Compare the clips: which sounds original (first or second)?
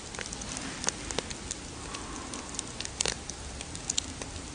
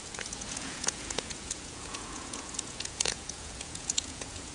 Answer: first